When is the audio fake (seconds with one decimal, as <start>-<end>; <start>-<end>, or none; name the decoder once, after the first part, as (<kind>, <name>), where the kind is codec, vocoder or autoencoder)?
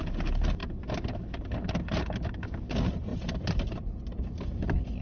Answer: 3.1-3.9 (vocoder, BigVGAN v2)